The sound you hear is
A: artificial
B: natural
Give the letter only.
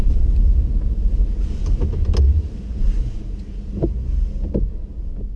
B